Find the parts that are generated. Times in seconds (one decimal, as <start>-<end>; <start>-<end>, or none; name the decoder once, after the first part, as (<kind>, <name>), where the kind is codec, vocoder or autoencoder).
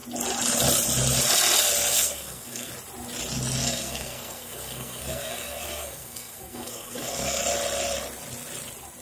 1.9-2.7 (codec, SNAC); 3.6-7.4